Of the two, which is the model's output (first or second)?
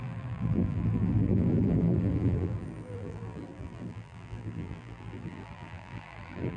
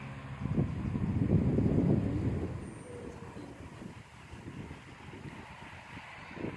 first